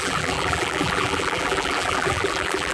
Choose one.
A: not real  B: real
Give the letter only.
A